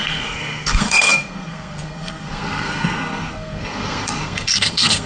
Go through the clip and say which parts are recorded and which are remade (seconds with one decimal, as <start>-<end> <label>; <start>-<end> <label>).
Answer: 0.0-5.1 remade